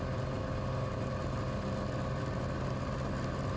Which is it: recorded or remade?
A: recorded